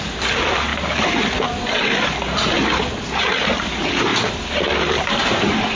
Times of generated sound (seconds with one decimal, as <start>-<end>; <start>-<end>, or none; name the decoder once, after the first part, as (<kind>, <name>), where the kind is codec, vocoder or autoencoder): 0.0-0.7 (vocoder, BigVGAN v2); 3.2-5.8